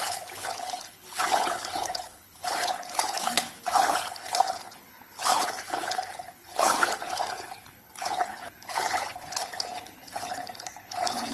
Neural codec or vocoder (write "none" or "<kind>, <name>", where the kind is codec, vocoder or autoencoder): codec, HILCodec